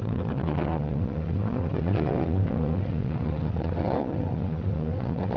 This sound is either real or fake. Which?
fake